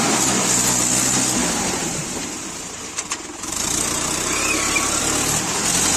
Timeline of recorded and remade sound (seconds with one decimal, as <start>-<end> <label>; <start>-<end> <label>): 0.0-1.4 recorded; 1.4-5.0 remade; 5.0-6.0 recorded